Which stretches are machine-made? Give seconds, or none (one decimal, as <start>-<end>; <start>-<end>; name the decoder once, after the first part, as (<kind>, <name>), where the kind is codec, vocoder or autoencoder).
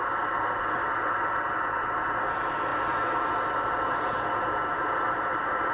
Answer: none